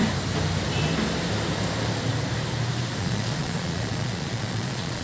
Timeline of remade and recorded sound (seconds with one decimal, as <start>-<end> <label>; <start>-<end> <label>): 0.0-3.0 recorded; 3.0-5.0 remade